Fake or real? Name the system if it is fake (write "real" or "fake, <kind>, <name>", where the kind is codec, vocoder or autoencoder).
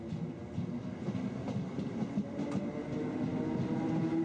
real